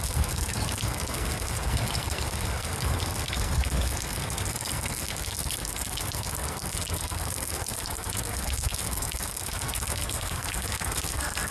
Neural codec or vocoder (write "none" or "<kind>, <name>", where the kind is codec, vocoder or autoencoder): codec, SNAC